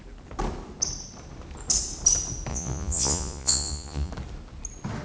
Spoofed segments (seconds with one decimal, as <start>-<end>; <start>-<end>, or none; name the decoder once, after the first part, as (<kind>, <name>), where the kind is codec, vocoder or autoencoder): 2.5-4.1 (vocoder, Vocos)